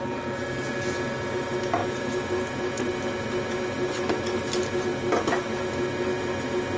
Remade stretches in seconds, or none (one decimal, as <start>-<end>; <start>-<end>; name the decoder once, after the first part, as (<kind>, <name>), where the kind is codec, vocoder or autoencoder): none